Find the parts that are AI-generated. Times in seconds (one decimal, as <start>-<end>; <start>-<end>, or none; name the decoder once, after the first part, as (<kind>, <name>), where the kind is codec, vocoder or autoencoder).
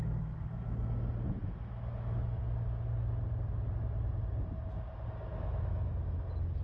1.4-2.4 (autoencoder, DAC-VAE); 5.3-5.9